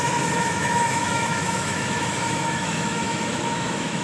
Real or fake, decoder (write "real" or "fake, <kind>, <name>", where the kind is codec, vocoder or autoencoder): fake, autoencoder, DAC-VAE